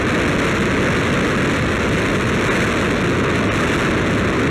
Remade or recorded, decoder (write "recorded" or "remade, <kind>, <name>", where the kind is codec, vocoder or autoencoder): recorded